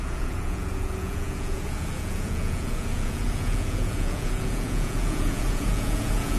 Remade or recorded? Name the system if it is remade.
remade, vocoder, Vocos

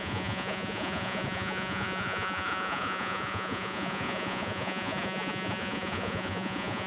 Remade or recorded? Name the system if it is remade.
remade, vocoder, Vocos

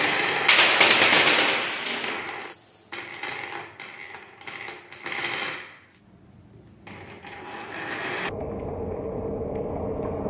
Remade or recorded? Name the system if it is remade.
recorded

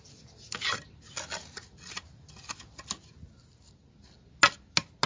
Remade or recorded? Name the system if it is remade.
recorded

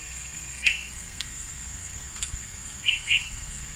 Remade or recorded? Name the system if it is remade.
remade, codec, SNAC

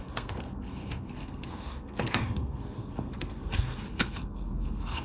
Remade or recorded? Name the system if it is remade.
remade, codec, SNAC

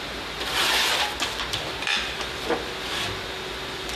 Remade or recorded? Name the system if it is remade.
recorded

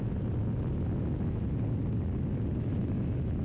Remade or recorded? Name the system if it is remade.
recorded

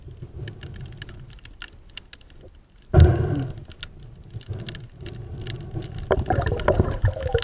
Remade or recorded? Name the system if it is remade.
recorded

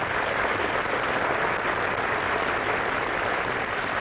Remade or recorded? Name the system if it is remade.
recorded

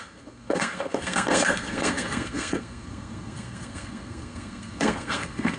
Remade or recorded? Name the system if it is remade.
remade, codec, SNAC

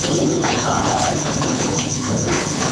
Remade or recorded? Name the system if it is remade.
remade, codec, HILCodec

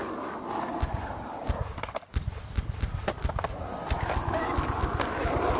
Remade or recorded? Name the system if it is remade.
recorded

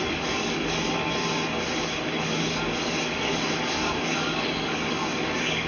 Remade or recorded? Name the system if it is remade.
remade, codec, DAC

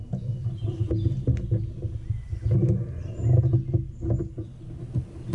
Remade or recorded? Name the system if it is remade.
recorded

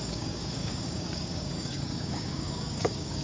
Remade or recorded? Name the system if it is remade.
remade, codec, DAC